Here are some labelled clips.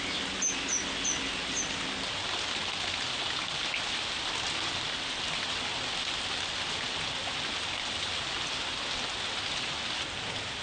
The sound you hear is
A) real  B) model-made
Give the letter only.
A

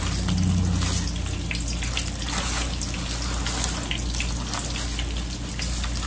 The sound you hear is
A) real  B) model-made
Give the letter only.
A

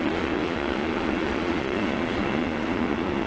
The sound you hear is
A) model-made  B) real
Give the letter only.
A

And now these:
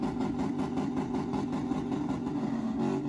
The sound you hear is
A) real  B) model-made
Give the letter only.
A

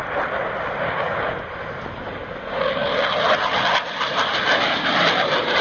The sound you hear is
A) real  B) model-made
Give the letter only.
A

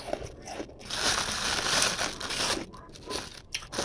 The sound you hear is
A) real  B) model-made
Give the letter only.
A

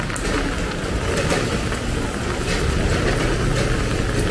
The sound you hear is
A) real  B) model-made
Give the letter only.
A